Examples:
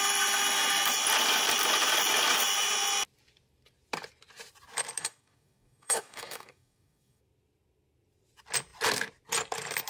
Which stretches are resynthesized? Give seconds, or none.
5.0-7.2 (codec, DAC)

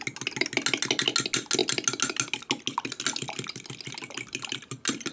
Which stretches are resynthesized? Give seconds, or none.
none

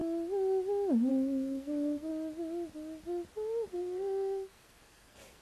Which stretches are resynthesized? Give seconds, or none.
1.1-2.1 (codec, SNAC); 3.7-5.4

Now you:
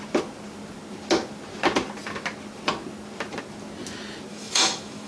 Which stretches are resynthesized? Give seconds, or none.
4.3-5.1 (autoencoder, DAC-VAE)

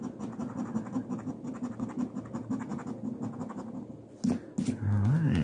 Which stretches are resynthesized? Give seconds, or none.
none

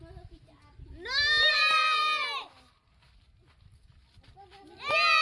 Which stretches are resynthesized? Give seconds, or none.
none

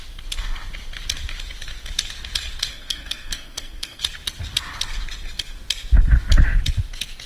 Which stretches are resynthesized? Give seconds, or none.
2.7-4.0 (codec, SNAC)

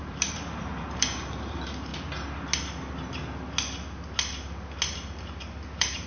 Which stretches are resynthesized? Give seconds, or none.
0.0-1.9 (vocoder, BigVGAN v2); 5.6-6.1